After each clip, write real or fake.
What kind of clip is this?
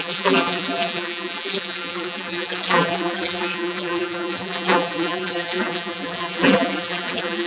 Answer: fake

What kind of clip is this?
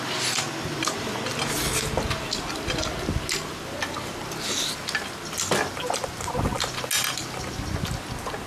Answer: real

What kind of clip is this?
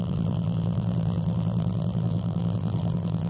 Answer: fake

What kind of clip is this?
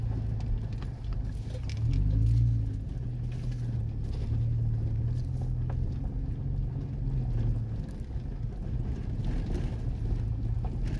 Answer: real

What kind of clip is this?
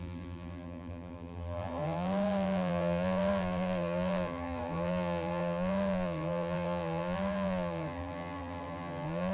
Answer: fake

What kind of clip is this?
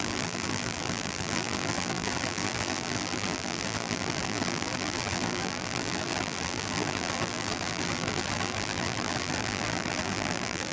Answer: fake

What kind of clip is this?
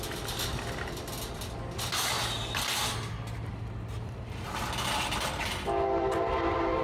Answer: real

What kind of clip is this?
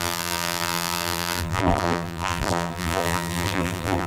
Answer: fake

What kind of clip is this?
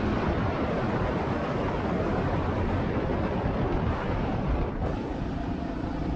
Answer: fake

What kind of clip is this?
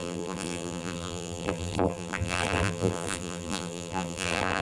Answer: fake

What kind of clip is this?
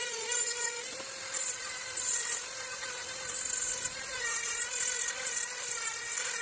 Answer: fake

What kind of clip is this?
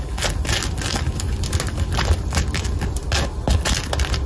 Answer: real